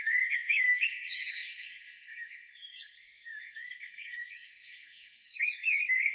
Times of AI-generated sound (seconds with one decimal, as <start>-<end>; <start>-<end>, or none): 0.0-6.1